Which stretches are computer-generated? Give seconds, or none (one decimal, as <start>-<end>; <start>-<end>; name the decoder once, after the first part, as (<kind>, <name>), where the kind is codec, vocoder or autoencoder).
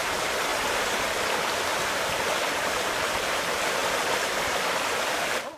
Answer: 0.0-3.8 (vocoder, BigVGAN v2); 4.3-5.6